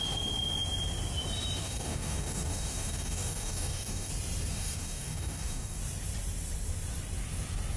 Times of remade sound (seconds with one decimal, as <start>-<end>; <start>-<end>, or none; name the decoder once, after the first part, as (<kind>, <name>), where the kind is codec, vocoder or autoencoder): 1.6-4.1 (codec, DAC); 4.5-5.8